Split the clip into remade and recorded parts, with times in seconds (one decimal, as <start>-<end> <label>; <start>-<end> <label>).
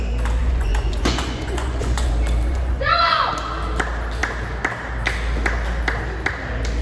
0.0-0.4 recorded; 0.4-2.1 remade; 2.1-2.5 recorded; 2.5-3.3 remade; 3.3-6.8 recorded